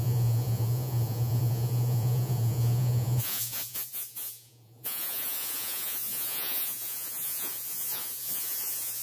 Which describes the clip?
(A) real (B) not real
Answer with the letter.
B